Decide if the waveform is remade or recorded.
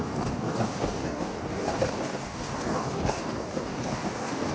remade